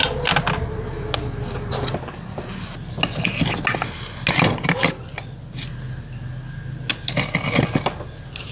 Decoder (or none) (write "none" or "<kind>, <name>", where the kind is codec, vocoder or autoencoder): none